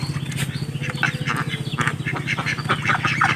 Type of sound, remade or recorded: recorded